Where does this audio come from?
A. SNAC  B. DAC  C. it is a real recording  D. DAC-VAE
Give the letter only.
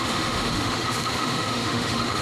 D